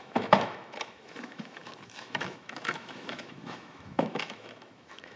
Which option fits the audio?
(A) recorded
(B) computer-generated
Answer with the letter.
B